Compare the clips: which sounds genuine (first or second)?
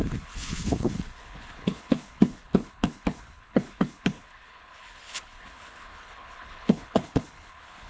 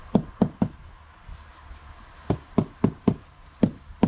second